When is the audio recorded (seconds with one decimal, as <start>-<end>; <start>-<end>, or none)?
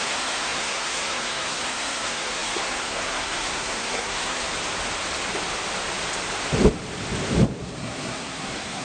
4.5-7.6